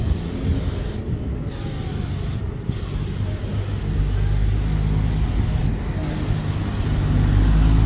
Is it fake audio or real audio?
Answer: real